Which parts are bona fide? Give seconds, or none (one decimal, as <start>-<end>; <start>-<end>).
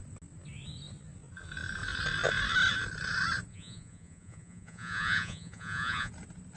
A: 0.0-3.5; 6.1-6.6